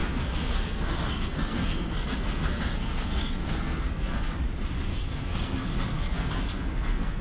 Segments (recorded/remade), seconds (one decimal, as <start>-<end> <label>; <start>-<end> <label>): 0.0-4.3 remade; 4.3-4.9 recorded; 4.9-7.2 remade

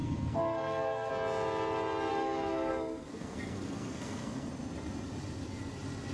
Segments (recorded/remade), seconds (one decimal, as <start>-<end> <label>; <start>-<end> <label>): 0.0-1.1 remade; 1.1-2.1 recorded; 2.1-4.5 remade; 4.5-6.1 recorded